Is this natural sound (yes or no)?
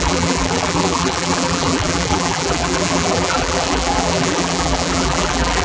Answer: no